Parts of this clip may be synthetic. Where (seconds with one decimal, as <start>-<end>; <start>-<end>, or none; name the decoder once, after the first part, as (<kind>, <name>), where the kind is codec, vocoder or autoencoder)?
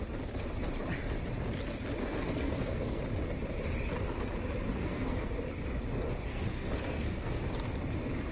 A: 2.0-3.0 (codec, SNAC); 4.7-5.4; 6.3-7.4